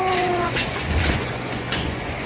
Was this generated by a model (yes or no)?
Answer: yes